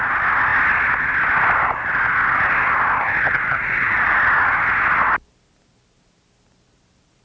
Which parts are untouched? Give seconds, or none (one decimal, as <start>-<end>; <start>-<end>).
0.0-3.6; 4.2-7.2